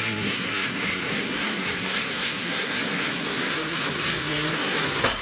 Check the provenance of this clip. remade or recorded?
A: remade